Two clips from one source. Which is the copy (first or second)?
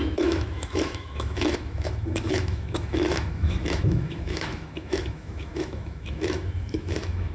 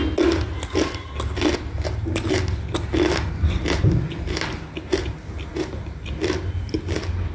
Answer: first